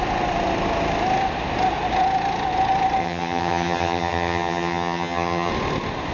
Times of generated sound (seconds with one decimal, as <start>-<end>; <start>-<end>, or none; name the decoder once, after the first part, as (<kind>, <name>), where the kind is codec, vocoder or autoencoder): 3.0-5.5 (vocoder, HiFi-GAN)